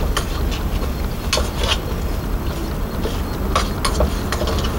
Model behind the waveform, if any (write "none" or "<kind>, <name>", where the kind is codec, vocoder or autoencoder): none